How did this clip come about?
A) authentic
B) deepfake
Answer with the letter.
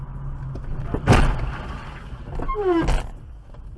A